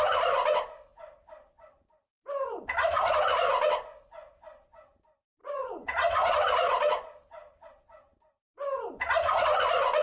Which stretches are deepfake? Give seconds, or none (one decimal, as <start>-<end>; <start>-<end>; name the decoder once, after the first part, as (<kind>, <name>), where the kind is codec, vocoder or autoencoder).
5.4-7.7 (vocoder, Vocos)